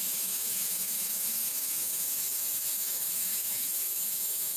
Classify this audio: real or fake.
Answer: fake